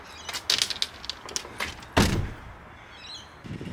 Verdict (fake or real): real